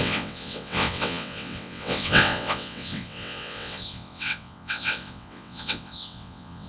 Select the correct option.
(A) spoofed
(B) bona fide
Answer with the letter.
A